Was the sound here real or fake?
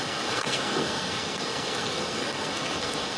fake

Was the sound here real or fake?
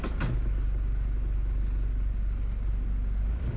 real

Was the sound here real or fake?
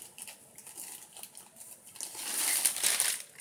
real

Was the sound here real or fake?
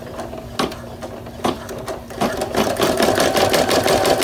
real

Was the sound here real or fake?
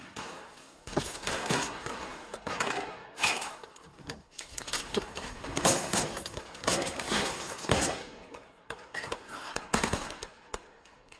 fake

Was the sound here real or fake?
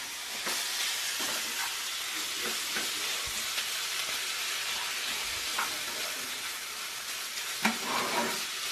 real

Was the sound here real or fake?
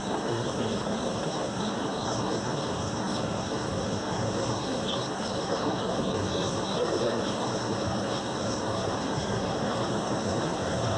fake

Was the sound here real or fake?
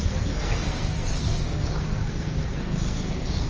fake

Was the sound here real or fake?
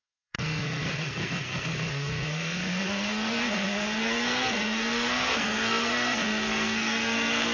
fake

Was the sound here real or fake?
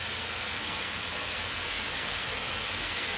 fake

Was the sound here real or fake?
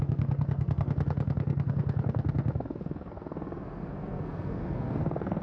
fake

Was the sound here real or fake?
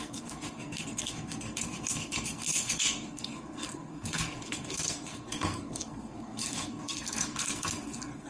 fake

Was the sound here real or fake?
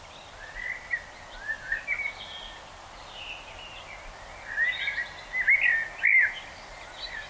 real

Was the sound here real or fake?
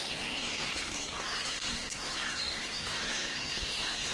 fake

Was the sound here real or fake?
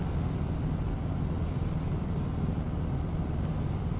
real